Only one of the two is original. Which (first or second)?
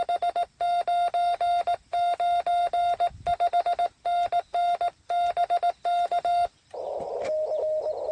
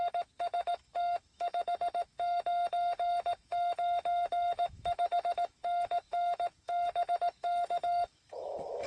first